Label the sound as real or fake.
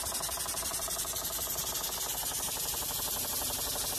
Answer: real